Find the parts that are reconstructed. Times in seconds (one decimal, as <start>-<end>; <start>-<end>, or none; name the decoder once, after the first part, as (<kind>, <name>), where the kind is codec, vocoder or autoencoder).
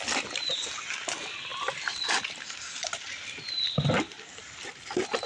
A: 1.5-4.7 (vocoder, BigVGAN v2)